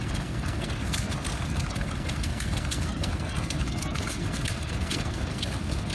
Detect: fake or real fake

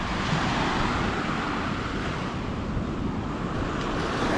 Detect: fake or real real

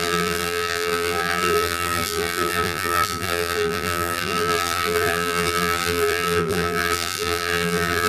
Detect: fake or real fake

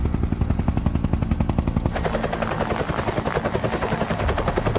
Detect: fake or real real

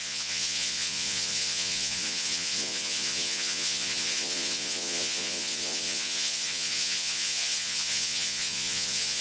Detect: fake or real fake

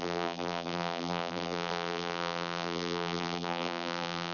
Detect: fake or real fake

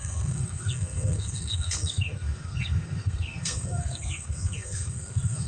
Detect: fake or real fake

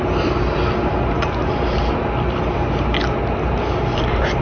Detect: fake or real real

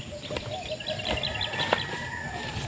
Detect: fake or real real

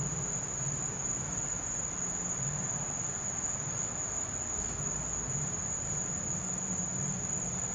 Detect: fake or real real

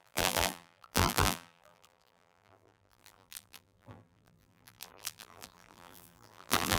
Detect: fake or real fake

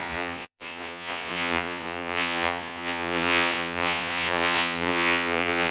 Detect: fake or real fake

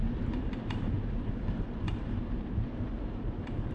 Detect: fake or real fake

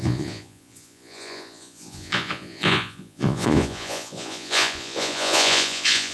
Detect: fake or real fake